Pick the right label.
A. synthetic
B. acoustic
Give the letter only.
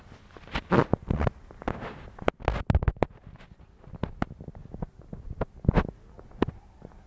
B